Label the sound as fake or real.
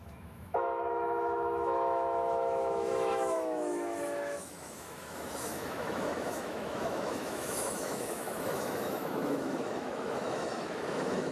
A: fake